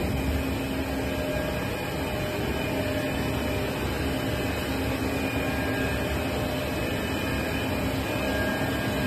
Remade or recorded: recorded